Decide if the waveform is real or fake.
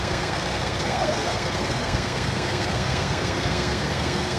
fake